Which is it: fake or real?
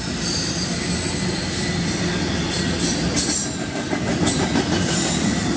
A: real